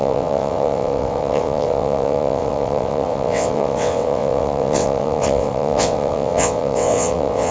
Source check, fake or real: fake